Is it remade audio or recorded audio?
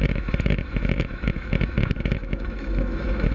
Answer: remade